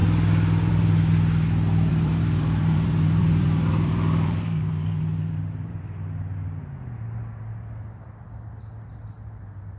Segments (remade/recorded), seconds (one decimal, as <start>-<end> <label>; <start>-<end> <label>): 0.0-1.9 recorded; 1.9-5.8 remade; 5.8-9.8 recorded

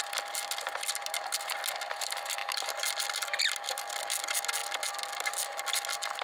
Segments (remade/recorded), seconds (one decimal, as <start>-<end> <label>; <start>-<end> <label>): 0.0-6.2 recorded

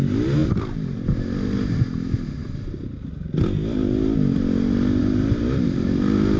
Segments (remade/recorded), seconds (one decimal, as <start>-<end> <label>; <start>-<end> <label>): 0.0-6.4 recorded

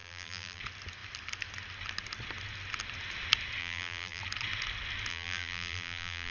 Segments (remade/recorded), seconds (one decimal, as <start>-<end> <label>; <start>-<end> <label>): 0.0-0.6 remade; 0.6-3.6 recorded; 3.6-4.2 remade; 4.2-5.1 recorded; 5.1-6.3 remade

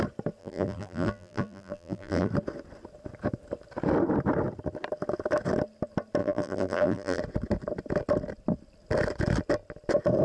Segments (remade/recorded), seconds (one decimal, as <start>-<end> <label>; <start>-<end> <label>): 0.0-0.4 recorded; 0.4-2.3 remade; 2.3-6.2 recorded; 6.2-7.2 remade; 7.2-10.2 recorded

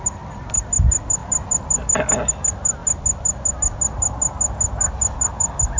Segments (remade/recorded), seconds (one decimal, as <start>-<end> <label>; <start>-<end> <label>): 0.0-5.8 recorded